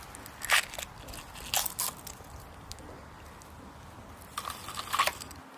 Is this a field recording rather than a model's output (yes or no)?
yes